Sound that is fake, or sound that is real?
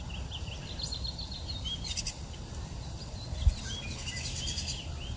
real